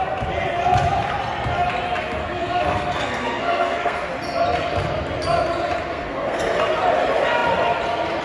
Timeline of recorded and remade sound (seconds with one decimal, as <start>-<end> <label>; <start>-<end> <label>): 0.0-2.2 recorded; 2.2-4.1 remade; 4.1-5.9 recorded; 5.9-6.4 remade; 6.4-8.2 recorded